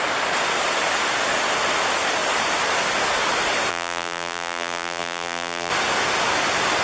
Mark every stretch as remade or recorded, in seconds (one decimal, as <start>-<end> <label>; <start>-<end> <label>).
0.0-3.7 recorded; 3.7-5.7 remade; 5.7-6.8 recorded